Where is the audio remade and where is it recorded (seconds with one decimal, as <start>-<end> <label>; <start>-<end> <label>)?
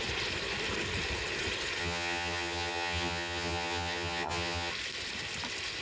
0.0-1.8 recorded; 1.8-4.7 remade; 4.7-5.8 recorded